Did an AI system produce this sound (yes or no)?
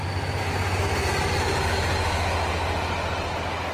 no